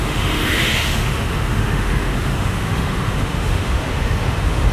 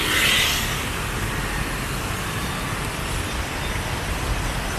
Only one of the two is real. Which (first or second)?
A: second